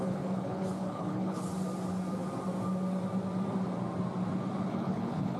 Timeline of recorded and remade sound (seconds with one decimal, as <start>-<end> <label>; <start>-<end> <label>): 0.0-1.5 remade; 1.5-4.7 recorded; 4.7-5.4 remade